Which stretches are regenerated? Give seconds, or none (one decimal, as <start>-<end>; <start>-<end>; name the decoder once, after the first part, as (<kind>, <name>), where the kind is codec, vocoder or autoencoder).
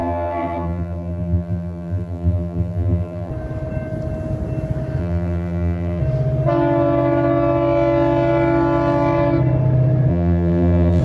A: 0.0-3.3 (vocoder, BigVGAN v2); 5.0-6.0; 10.1-11.0